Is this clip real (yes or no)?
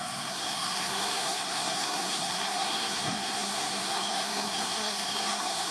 no